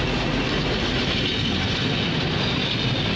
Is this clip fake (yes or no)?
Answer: no